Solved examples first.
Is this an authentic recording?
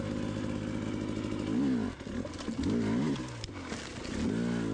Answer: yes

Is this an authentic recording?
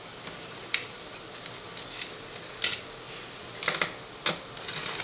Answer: yes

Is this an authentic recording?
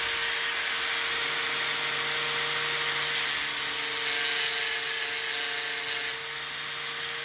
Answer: yes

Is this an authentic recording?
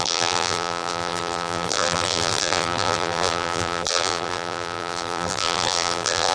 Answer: no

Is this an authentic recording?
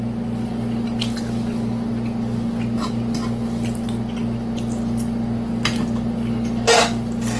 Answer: yes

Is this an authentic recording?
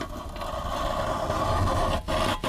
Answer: yes